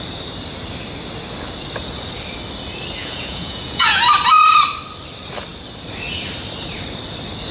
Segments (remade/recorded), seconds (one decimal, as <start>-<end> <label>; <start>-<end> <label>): 0.0-3.0 recorded; 3.0-4.0 remade; 4.0-7.5 recorded